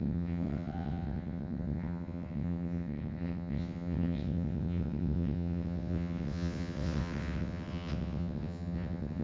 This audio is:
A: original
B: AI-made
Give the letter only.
B